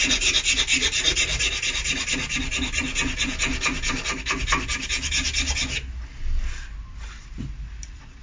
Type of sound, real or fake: real